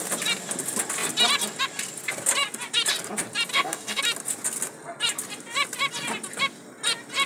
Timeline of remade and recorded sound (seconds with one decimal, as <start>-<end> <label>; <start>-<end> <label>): 0.0-3.5 recorded; 3.5-4.0 remade; 4.0-7.3 recorded